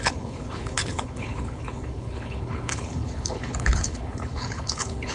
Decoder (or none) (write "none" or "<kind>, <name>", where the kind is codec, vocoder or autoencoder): codec, HILCodec